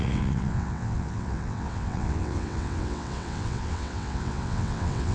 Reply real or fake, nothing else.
fake